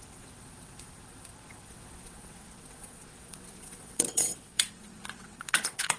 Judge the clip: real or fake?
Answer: fake